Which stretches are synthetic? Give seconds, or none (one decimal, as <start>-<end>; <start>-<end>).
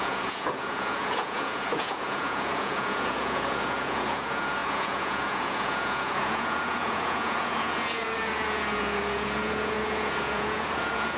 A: 0.0-11.2